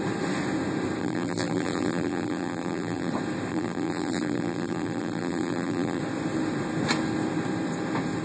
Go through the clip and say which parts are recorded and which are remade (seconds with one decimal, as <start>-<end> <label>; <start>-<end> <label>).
0.0-1.0 recorded; 1.0-3.1 remade; 3.1-3.5 recorded; 3.5-6.0 remade; 6.0-8.2 recorded